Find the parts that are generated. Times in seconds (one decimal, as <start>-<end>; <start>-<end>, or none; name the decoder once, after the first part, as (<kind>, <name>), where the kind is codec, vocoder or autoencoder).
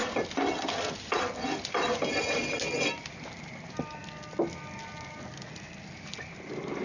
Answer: none